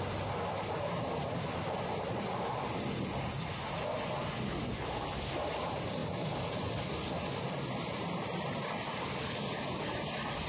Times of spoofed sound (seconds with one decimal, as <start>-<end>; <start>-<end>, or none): none